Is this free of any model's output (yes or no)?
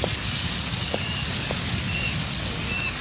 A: no